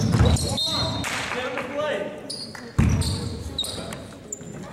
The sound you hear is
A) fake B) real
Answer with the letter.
B